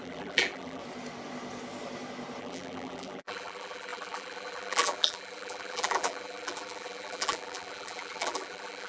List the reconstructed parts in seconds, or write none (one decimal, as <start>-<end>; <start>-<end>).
0.0-0.8; 2.4-8.9